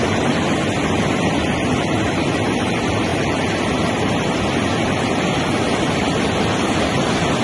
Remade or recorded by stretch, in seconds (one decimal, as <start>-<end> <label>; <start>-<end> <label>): 0.0-7.4 recorded